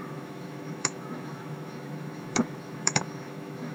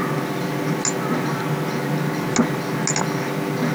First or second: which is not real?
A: first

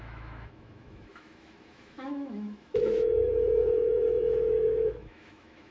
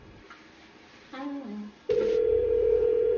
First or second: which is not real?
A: first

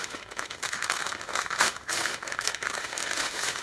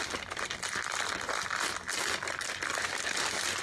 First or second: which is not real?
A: first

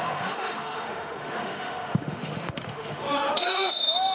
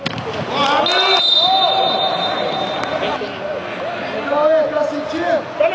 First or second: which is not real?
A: first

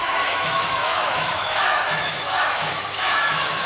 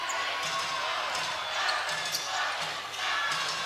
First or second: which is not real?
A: first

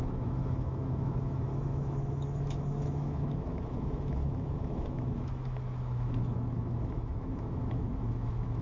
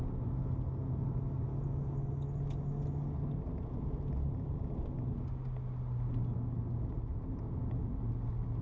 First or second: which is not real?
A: first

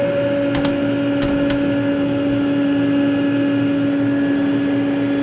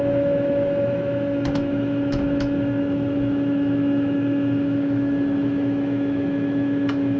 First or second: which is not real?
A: second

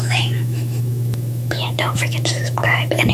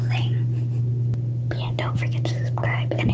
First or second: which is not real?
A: first